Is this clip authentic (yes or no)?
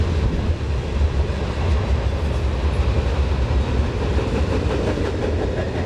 yes